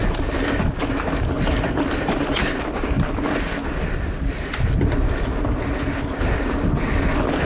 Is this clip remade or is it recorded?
recorded